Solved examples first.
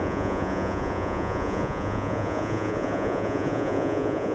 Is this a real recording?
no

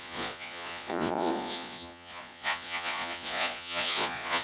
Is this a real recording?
no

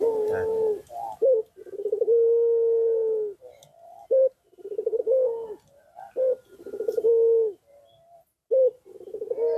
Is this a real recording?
yes